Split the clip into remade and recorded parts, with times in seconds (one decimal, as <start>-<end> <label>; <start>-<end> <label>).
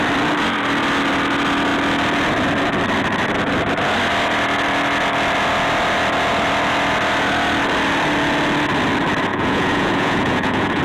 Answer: 0.0-9.3 recorded; 9.3-10.8 remade